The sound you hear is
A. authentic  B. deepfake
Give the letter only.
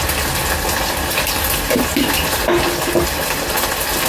A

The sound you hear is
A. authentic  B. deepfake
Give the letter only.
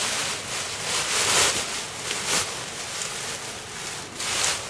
A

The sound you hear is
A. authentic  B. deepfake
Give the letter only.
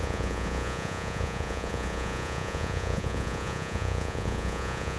B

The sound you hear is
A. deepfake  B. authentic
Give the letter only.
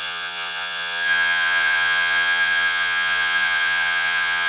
A